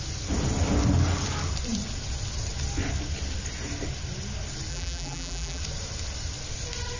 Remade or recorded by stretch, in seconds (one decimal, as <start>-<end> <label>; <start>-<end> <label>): 0.0-4.7 recorded; 4.7-5.6 remade; 5.6-7.0 recorded